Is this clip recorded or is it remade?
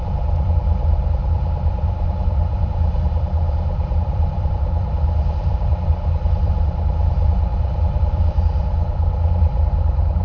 remade